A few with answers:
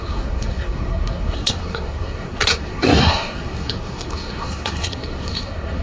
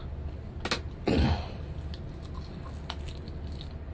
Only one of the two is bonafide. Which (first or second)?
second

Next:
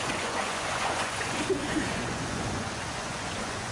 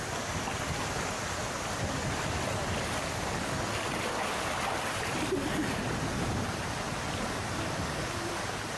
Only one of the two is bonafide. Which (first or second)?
second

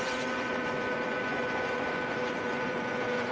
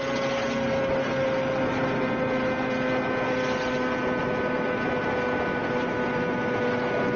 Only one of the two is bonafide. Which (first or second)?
second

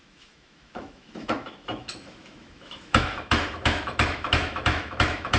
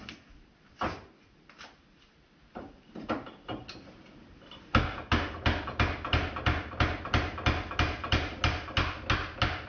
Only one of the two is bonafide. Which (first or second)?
second